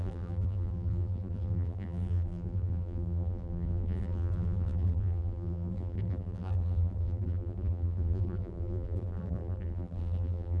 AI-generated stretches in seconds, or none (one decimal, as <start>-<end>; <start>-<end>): 0.0-10.6

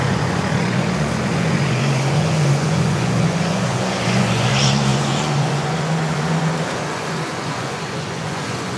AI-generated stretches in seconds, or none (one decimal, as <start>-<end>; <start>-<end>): 0.0-8.8